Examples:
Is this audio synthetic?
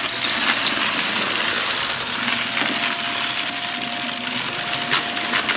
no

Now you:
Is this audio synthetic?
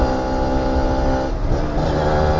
no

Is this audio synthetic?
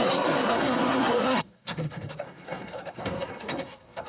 yes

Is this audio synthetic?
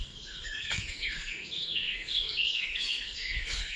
yes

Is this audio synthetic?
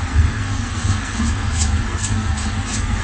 yes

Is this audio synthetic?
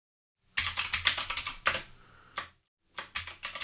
no